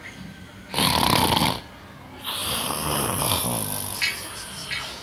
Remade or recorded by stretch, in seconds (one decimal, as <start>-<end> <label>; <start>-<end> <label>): 0.0-2.4 recorded; 2.4-3.2 remade; 3.2-5.0 recorded